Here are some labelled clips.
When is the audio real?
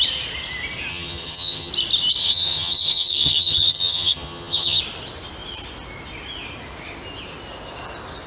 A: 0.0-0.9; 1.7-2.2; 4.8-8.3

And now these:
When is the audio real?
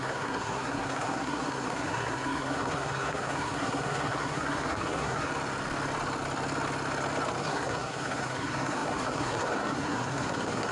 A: 5.3-7.4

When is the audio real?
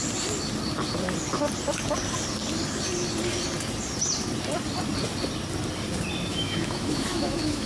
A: 0.0-6.3